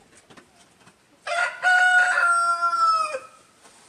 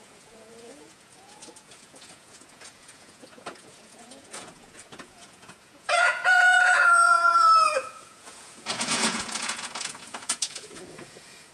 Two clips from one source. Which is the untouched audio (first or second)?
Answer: first